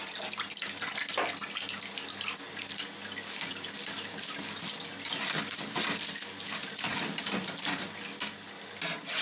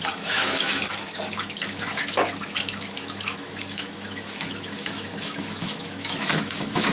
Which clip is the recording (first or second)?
first